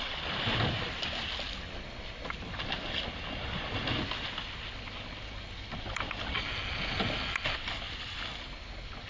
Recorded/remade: recorded